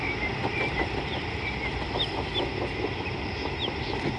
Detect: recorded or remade recorded